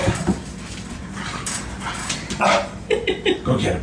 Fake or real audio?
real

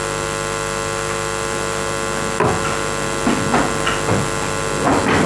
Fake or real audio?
real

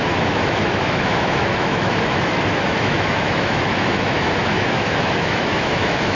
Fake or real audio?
fake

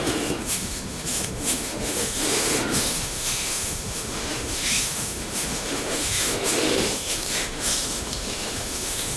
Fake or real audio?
fake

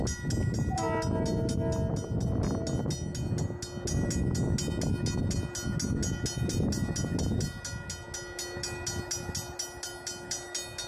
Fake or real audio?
real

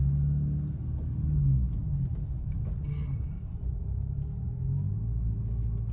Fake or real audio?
real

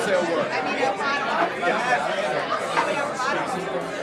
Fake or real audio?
real